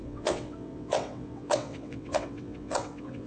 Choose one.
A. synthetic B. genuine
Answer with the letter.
A